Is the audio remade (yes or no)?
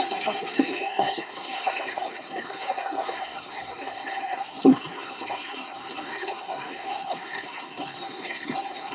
yes